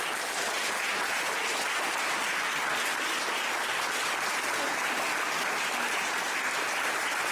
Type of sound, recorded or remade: recorded